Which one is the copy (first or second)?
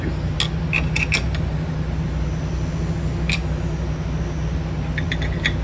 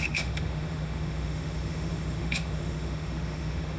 second